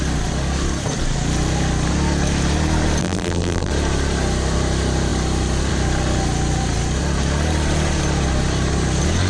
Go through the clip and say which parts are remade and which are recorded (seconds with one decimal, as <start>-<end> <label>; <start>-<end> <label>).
0.0-3.0 recorded; 3.0-3.7 remade; 3.7-9.3 recorded